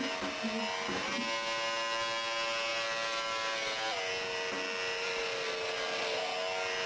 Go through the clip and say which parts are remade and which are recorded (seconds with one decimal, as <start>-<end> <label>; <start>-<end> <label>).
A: 0.0-6.9 recorded